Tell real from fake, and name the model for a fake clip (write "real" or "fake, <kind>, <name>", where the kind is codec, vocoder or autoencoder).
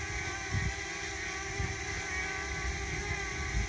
real